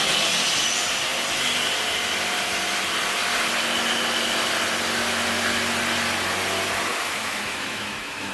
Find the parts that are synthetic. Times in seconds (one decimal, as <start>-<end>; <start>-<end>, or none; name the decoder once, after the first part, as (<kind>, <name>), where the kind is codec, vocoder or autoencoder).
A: 6.9-8.3 (autoencoder, DAC-VAE)